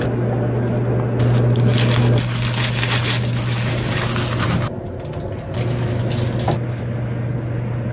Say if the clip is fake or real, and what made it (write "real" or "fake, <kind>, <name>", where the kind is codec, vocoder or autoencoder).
real